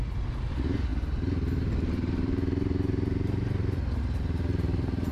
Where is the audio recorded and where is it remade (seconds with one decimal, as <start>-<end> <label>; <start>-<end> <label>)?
0.0-5.1 recorded